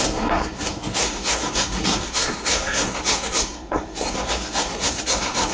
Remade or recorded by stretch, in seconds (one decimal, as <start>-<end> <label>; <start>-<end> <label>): 0.0-5.5 remade